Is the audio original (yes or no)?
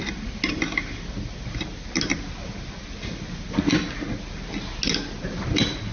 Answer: yes